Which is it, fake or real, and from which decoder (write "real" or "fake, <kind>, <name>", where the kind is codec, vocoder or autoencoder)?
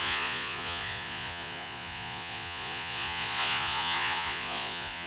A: fake, vocoder, Vocos